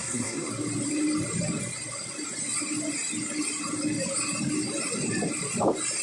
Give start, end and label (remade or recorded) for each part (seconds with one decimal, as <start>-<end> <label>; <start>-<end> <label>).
0.0-0.5 remade; 0.5-6.0 recorded